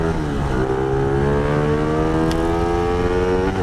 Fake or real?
real